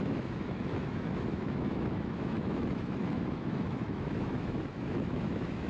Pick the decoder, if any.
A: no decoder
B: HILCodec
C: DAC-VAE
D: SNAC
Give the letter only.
C